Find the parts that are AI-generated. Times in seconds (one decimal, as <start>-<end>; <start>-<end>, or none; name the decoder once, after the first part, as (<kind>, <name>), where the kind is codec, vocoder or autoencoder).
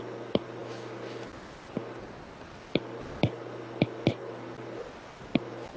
none